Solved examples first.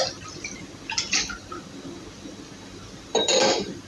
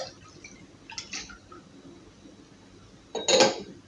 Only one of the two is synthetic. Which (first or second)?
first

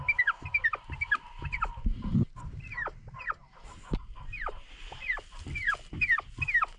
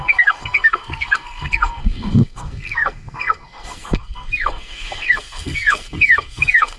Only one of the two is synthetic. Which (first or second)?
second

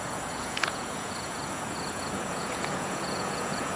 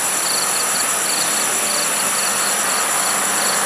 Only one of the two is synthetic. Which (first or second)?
first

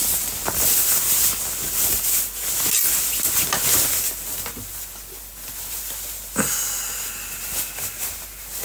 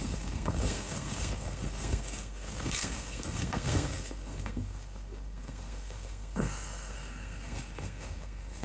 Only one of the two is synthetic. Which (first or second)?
second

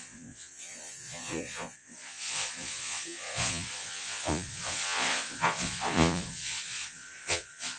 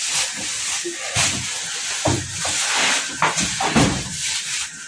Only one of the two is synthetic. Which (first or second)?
first